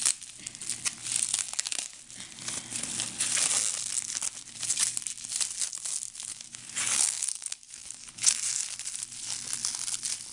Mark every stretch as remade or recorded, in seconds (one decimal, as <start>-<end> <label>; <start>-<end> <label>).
0.0-1.4 recorded; 1.4-2.0 remade; 2.0-6.3 recorded; 6.3-8.4 remade; 8.4-10.3 recorded